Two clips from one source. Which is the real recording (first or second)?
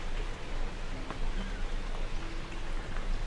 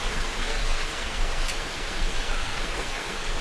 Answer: first